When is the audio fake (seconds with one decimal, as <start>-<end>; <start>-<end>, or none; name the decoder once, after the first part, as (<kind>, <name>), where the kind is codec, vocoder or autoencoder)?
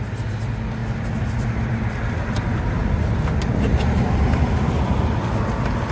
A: none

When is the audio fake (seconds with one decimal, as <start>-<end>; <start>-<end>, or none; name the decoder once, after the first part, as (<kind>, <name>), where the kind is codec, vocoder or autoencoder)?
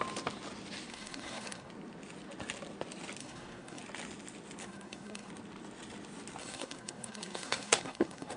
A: 0.9-1.7 (codec, SNAC); 3.2-3.8; 4.6-5.3; 6.4-8.4